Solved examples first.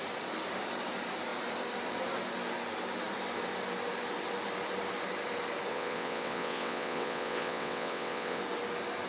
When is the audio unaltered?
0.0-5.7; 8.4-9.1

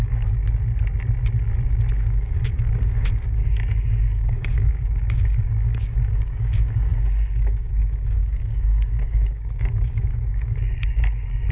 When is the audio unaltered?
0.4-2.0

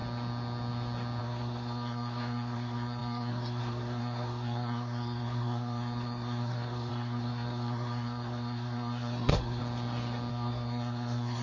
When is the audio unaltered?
0.0-1.2; 9.6-10.3

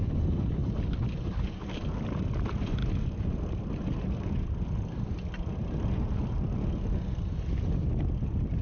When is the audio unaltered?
0.0-8.6